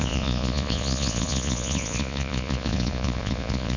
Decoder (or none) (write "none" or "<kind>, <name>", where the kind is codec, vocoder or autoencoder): vocoder, Vocos